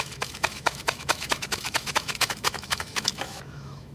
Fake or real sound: fake